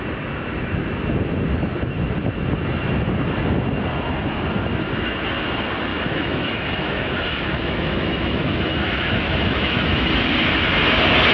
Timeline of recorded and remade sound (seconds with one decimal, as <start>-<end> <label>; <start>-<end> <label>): 0.0-5.9 recorded; 5.9-10.1 remade; 10.1-11.3 recorded